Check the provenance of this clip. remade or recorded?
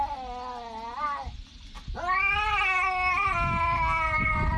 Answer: recorded